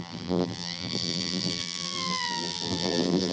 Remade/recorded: remade